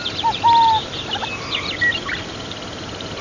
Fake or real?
real